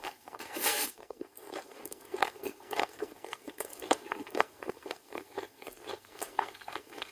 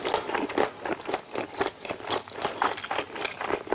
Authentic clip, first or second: second